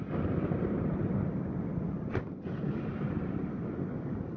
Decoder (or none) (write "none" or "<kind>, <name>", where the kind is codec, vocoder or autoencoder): none